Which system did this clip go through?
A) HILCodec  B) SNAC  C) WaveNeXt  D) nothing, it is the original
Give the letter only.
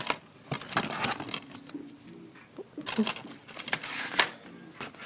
D